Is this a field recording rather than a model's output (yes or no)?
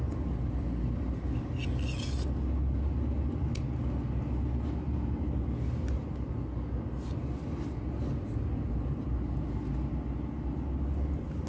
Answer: yes